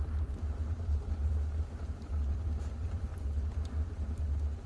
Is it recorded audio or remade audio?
remade